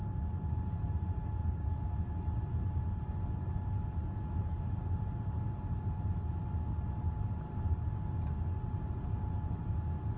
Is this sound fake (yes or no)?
no